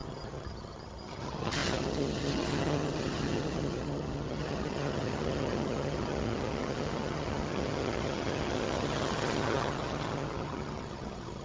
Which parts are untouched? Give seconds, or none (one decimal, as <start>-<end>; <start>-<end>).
none